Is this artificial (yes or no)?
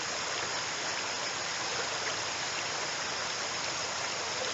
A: no